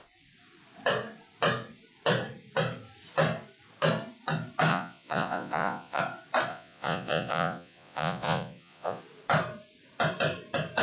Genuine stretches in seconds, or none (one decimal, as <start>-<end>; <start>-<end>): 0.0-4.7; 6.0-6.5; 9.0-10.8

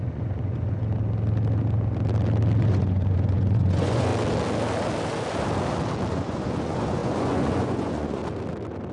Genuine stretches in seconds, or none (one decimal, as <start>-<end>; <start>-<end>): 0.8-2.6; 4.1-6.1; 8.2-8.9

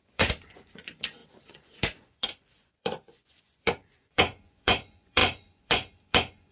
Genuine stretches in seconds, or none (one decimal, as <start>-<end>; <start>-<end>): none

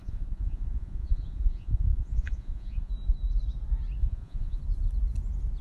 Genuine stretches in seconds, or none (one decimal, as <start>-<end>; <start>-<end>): 2.9-4.0; 4.6-5.6

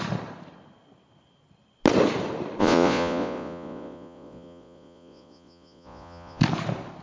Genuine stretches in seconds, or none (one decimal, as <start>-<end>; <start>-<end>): 0.0-2.6; 6.4-7.0

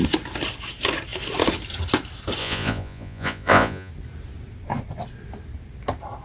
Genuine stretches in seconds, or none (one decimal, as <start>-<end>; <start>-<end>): 0.0-2.4; 3.9-6.2